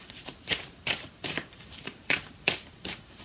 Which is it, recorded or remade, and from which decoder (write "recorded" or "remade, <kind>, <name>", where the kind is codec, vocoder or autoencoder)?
remade, vocoder, BigVGAN v2